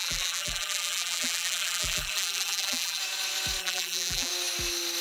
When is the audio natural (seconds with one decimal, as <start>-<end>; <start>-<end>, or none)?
3.0-3.6; 4.3-5.0